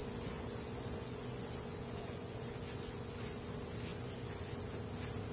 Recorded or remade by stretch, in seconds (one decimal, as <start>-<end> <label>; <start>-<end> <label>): 0.0-3.2 remade; 3.2-3.9 recorded; 3.9-4.6 remade; 4.6-5.3 recorded

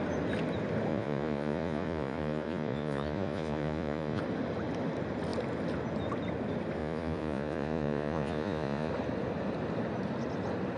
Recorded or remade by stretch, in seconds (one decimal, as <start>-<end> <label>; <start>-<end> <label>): 0.0-0.9 recorded; 0.9-4.2 remade; 4.2-6.8 recorded; 6.8-8.9 remade; 8.9-10.8 recorded

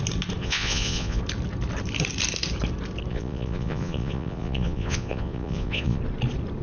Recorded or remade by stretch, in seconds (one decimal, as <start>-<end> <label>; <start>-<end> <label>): 0.0-0.4 recorded; 0.4-1.2 remade; 1.2-3.1 recorded; 3.1-6.0 remade; 6.0-6.6 recorded

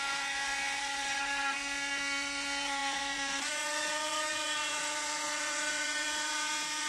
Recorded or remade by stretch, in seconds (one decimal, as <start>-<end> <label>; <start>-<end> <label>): 0.0-6.9 remade

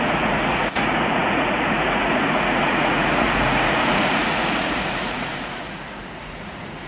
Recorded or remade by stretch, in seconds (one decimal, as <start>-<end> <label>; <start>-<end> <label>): 0.0-6.9 remade

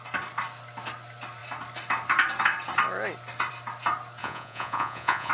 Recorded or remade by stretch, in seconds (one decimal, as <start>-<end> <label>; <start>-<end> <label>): 0.0-4.2 recorded; 4.2-5.3 remade

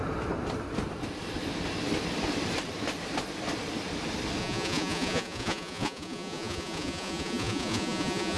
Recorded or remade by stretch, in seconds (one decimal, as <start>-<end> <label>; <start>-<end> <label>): 0.0-4.4 recorded; 4.4-8.4 remade